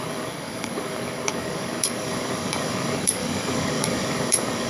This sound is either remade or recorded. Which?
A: remade